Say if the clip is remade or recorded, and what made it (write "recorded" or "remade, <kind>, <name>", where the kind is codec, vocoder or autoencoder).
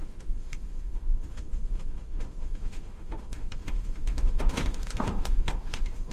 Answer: remade, autoencoder, DAC-VAE